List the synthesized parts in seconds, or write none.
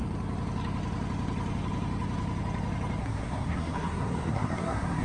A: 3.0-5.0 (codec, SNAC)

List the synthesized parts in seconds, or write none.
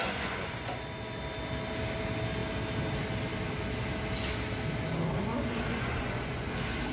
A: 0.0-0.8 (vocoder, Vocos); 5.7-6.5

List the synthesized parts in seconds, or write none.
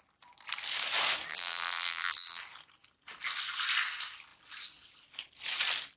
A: 1.3-2.4 (vocoder, BigVGAN v2)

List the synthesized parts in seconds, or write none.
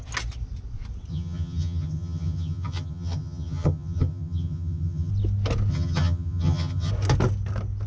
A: 1.1-5.1 (vocoder, HiFi-GAN); 5.7-6.9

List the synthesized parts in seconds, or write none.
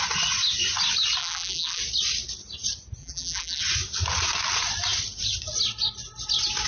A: 1.2-1.8 (vocoder, BigVGAN v2); 3.0-3.6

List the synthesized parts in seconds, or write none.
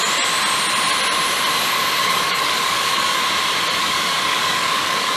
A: 2.0-3.2 (codec, DAC); 3.8-5.2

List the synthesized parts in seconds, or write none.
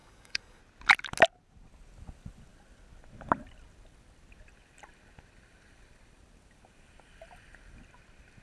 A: 0.0-0.6 (codec, DAC)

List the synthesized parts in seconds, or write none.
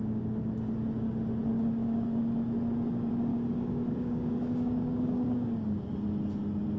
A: 1.5-2.2 (codec, DAC); 3.3-5.9